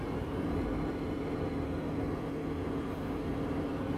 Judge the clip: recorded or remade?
recorded